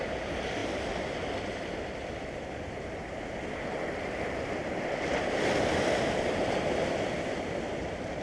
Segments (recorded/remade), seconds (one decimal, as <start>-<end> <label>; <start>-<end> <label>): 0.0-0.6 remade; 0.6-1.4 recorded; 1.4-8.2 remade